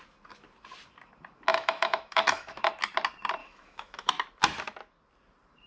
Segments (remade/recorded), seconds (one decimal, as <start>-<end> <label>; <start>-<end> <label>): 0.0-1.5 recorded; 1.5-2.7 remade; 2.7-3.4 recorded; 3.4-4.1 remade; 4.1-5.7 recorded